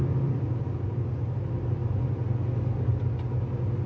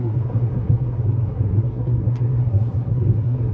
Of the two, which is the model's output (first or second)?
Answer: second